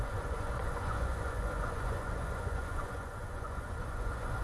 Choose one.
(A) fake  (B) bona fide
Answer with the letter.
A